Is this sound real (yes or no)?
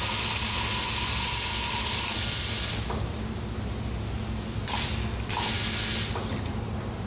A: yes